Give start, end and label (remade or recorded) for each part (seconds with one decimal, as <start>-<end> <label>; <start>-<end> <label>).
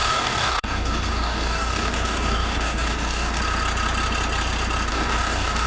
0.0-3.4 remade; 3.4-4.9 recorded; 4.9-5.7 remade